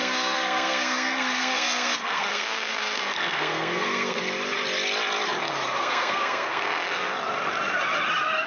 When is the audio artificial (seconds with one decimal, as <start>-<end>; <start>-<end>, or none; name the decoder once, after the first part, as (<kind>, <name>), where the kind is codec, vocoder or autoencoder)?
0.0-4.2 (codec, SNAC); 5.8-7.1